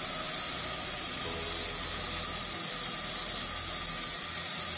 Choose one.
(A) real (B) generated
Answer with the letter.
A